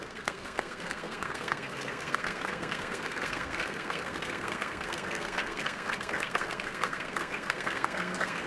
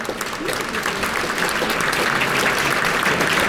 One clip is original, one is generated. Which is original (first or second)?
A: second